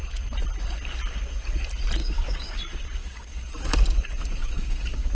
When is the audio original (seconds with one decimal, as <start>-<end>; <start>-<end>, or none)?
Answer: 0.0-2.0; 2.6-3.0; 3.5-4.4